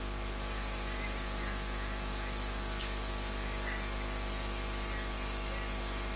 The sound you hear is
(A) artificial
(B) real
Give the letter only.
B